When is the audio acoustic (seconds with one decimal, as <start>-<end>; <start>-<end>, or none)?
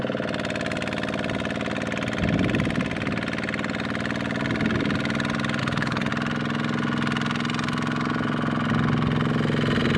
0.0-5.6; 6.1-10.0